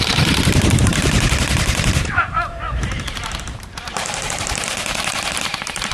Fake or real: fake